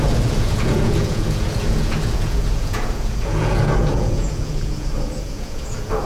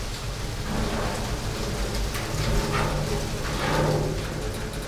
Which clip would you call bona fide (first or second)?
second